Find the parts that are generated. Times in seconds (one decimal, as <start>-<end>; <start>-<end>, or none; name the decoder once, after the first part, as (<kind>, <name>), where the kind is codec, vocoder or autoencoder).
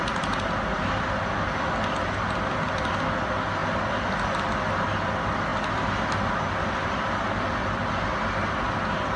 none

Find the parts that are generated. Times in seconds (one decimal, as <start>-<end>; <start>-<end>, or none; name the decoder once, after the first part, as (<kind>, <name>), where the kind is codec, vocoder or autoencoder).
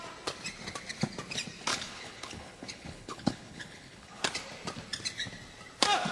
1.7-4.2 (codec, HILCodec)